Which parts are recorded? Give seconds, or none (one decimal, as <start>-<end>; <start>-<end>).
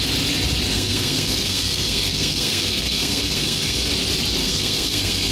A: 0.0-0.7; 3.9-4.4